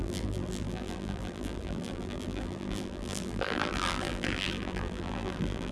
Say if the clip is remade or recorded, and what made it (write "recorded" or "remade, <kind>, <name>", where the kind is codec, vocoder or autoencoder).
remade, vocoder, BigVGAN v2